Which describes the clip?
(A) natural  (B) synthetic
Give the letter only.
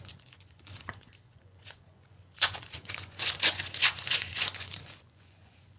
B